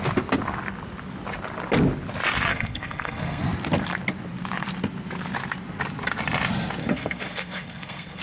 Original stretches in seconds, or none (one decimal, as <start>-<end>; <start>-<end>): 0.0-2.5; 3.4-6.8